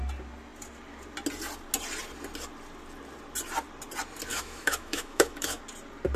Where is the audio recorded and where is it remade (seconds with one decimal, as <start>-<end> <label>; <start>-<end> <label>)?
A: 0.0-4.3 recorded; 4.3-5.6 remade; 5.6-6.2 recorded